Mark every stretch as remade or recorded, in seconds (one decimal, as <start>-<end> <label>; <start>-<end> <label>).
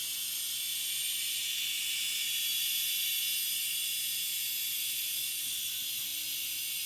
0.0-6.9 recorded